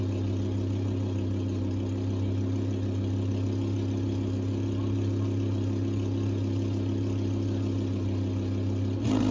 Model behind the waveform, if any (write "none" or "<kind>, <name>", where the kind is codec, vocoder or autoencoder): none